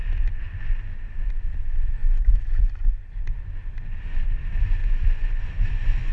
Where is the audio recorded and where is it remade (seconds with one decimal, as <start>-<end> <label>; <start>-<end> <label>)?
0.0-2.0 recorded; 2.0-3.0 remade; 3.0-4.8 recorded; 4.8-6.1 remade